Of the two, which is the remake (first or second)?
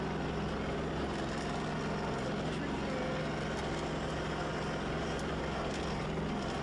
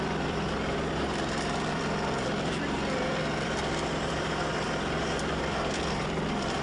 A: second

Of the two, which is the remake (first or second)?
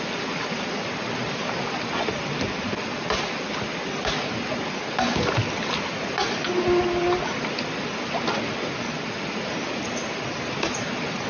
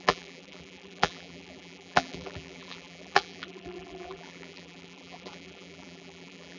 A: second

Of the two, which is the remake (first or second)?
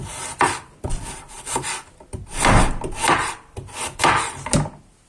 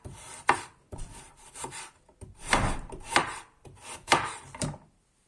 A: second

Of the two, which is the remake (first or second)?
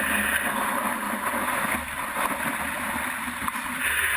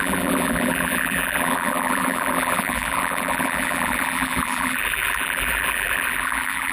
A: second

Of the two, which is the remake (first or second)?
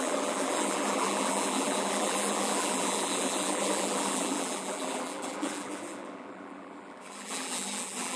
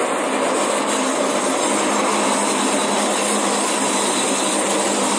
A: first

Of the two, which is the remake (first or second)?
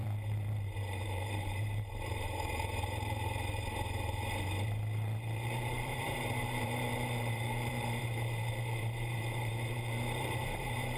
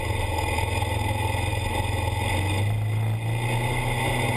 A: first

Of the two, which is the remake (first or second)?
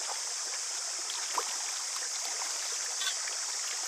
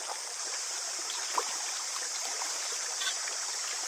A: second